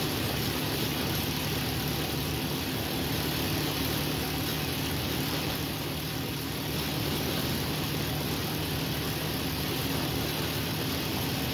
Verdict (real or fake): real